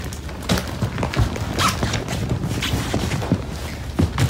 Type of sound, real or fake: real